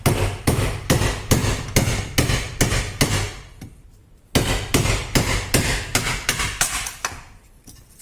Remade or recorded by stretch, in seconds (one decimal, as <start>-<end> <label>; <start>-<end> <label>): 0.0-8.0 recorded